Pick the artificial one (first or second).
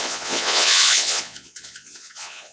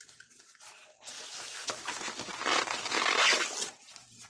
first